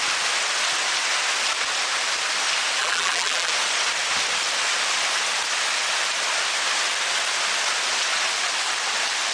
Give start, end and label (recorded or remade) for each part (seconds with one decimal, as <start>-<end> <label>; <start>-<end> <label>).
0.0-2.8 recorded; 2.8-3.5 remade; 3.5-9.3 recorded